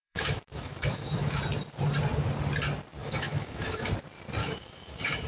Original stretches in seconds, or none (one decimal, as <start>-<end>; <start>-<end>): 1.4-3.0; 3.9-4.4